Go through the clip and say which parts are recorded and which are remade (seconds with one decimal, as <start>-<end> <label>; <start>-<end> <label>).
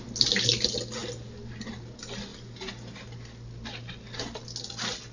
0.0-5.1 recorded